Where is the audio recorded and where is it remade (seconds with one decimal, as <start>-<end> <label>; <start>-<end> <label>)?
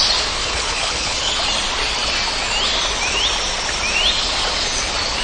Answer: 0.0-0.4 recorded; 0.4-1.3 remade; 1.3-5.2 recorded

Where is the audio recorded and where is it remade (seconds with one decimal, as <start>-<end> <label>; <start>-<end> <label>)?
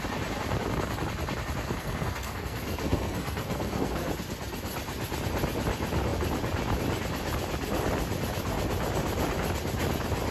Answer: 0.0-1.6 recorded; 1.6-4.1 remade; 4.1-10.3 recorded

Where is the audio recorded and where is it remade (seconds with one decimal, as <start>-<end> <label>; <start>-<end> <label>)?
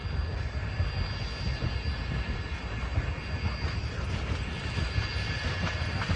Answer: 0.0-6.2 recorded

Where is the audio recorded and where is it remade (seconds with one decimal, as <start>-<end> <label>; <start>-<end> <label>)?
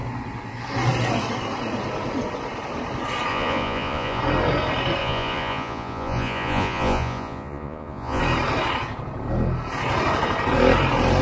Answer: 0.0-3.3 recorded; 3.3-4.2 remade; 4.2-5.0 recorded; 5.0-8.2 remade; 8.2-11.2 recorded